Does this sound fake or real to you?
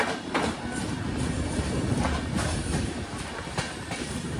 real